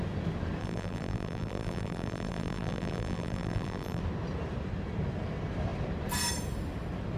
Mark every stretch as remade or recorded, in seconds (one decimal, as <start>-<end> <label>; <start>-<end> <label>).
0.0-0.6 recorded; 0.6-4.0 remade; 4.0-7.2 recorded